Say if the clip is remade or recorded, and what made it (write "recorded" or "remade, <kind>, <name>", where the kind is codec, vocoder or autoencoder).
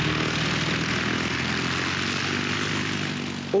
recorded